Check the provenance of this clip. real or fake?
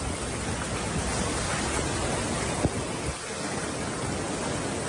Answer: real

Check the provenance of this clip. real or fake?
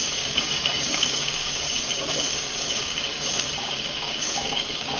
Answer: fake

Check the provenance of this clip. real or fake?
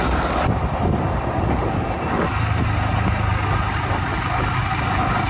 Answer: real